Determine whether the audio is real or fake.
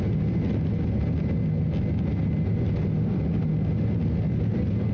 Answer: real